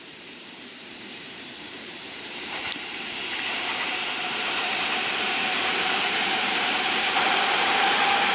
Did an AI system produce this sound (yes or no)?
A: yes